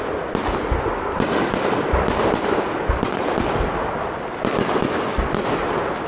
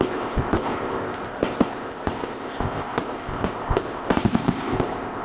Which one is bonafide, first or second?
first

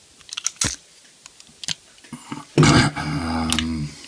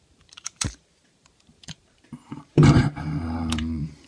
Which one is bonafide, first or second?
first